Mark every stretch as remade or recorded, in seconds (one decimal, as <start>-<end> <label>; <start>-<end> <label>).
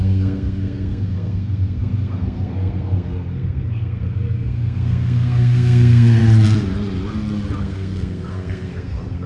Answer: 0.0-6.2 remade; 6.2-7.6 recorded; 7.6-9.3 remade